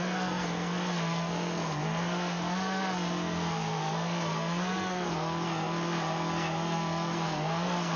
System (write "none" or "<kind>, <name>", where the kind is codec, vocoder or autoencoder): codec, SNAC